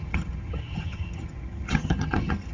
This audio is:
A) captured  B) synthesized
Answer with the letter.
B